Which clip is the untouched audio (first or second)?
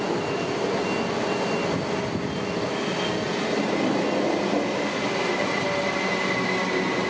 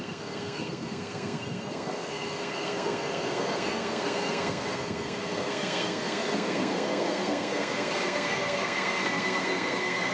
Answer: first